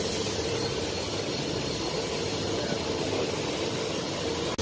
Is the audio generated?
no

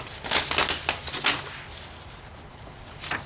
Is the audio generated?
no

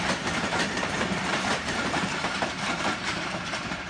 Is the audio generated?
yes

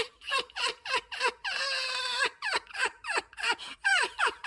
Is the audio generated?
no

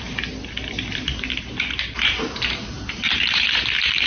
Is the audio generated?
no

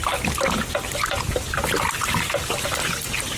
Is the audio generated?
no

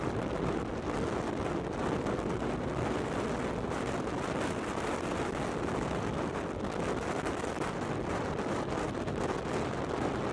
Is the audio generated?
no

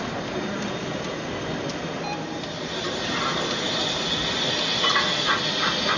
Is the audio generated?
no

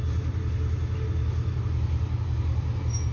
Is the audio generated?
no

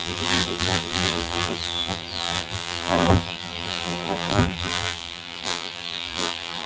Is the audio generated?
yes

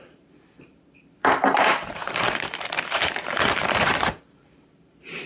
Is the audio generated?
yes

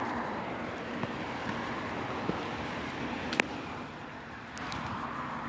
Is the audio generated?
yes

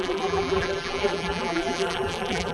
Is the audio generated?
yes